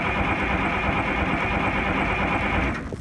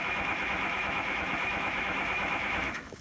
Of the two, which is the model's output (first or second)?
second